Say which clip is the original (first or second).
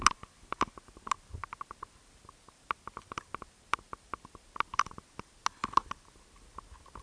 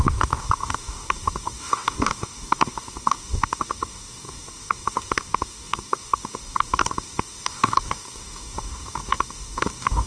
first